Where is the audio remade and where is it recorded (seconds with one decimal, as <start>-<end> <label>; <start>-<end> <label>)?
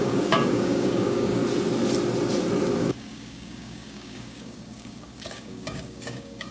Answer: 0.0-1.4 remade; 1.4-2.8 recorded; 2.8-6.5 remade